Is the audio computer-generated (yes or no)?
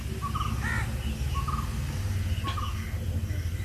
no